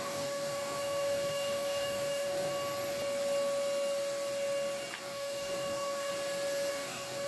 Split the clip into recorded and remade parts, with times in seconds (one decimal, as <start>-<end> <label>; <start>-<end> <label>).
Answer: 0.0-2.5 remade; 2.5-5.0 recorded; 5.0-6.1 remade; 6.1-6.7 recorded; 6.7-7.3 remade